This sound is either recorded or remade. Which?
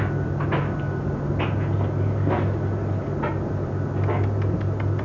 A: recorded